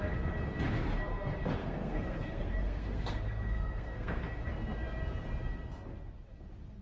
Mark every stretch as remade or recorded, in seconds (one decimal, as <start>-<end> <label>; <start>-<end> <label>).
0.0-1.6 recorded; 1.6-4.2 remade; 4.2-6.8 recorded